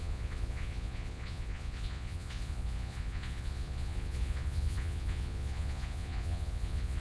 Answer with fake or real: fake